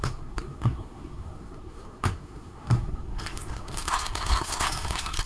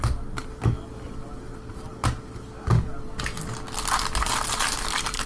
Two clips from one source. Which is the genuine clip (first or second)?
second